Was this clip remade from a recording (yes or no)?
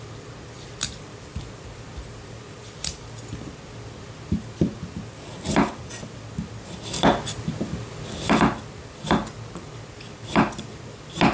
no